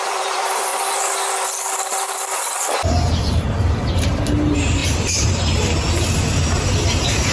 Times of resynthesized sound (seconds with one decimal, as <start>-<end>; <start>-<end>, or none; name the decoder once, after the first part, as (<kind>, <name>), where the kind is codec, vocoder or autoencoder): 0.0-0.7 (vocoder, BigVGAN v2); 3.9-7.3